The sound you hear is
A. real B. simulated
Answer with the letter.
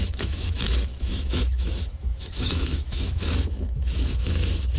B